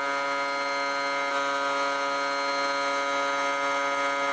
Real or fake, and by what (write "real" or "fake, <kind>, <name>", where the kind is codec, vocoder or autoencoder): real